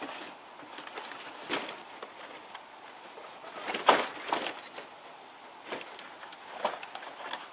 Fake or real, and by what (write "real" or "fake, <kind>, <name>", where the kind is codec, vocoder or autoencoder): real